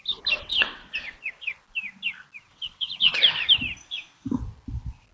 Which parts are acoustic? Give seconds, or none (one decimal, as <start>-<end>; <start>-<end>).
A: 0.0-0.4; 0.9-2.5; 3.1-5.1